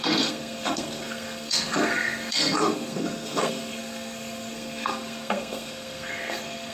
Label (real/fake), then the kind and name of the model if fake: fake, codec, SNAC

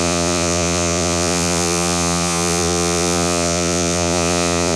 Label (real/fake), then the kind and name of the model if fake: fake, vocoder, Vocos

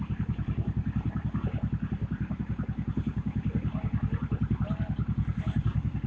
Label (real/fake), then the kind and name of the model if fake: fake, vocoder, BigVGAN v2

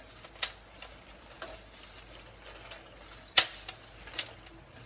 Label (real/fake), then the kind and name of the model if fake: real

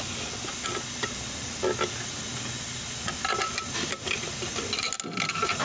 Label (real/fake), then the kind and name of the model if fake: real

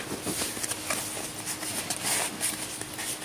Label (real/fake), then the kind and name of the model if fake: real